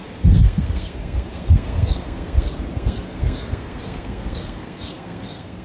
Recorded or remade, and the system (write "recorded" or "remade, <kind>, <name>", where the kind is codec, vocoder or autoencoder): remade, codec, SNAC